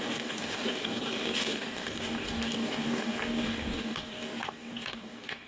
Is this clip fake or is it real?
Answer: fake